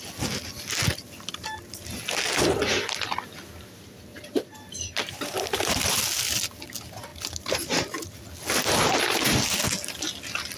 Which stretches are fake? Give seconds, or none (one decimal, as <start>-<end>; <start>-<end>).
4.1-5.9; 7.1-8.2